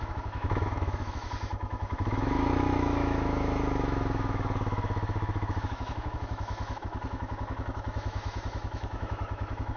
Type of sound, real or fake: fake